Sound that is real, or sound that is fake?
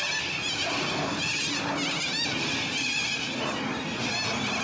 real